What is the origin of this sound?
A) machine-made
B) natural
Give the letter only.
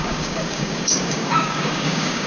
A